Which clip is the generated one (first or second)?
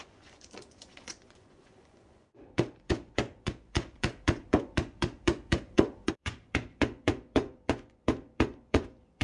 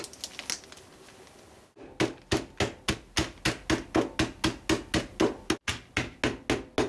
first